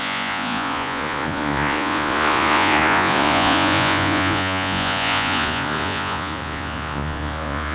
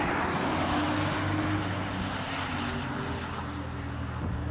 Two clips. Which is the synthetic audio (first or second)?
first